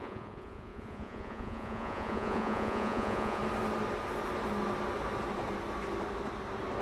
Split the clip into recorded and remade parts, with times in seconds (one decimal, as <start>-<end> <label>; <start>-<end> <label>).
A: 0.0-3.4 remade; 3.4-6.8 recorded